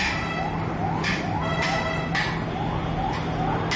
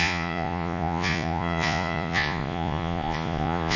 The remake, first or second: second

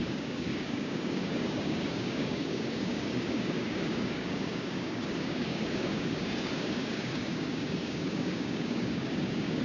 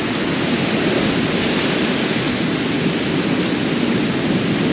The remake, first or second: first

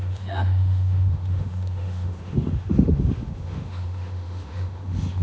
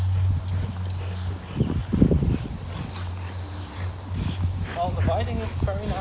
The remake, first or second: first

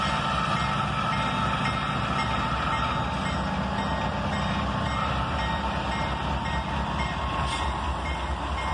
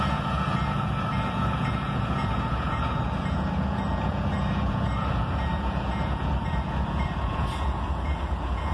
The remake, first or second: second